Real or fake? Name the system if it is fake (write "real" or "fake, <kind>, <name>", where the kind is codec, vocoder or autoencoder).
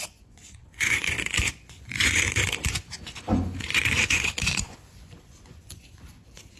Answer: fake, vocoder, Vocos